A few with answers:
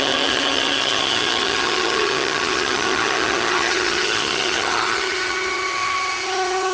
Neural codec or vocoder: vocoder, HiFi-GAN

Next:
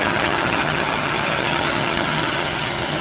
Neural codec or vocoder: vocoder, HiFi-GAN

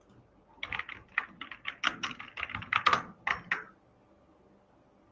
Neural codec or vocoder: none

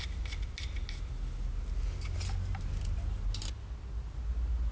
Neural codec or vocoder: none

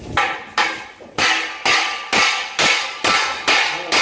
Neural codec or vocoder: none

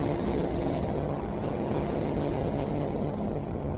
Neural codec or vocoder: vocoder, HiFi-GAN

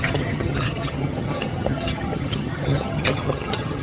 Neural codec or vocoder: vocoder, HiFi-GAN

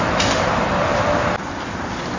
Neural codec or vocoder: none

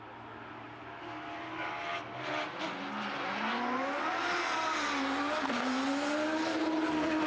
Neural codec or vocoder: none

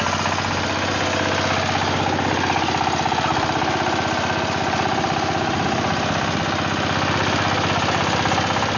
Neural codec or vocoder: none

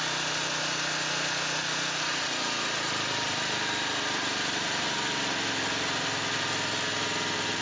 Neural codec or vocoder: none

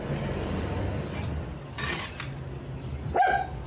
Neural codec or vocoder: none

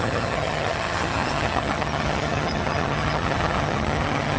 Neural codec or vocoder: vocoder, HiFi-GAN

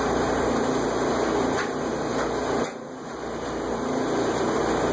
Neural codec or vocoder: none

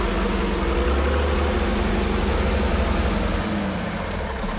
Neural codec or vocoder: none